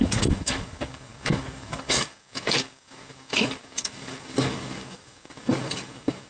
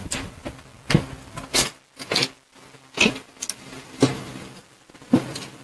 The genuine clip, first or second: second